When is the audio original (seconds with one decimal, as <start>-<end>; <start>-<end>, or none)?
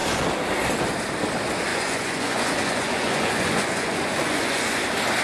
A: 0.0-1.7; 4.8-5.2